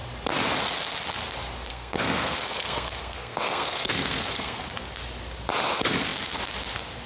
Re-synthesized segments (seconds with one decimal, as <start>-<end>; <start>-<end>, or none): 1.7-4.6